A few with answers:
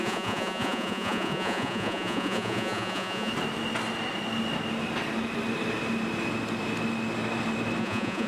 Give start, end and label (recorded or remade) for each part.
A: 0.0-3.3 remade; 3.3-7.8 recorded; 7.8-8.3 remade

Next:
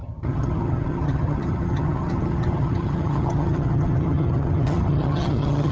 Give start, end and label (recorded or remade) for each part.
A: 0.0-5.7 remade